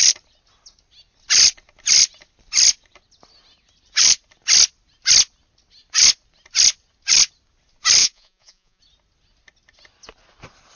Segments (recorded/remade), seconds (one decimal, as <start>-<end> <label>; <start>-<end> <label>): 0.0-8.0 recorded; 8.0-8.8 remade; 8.8-10.8 recorded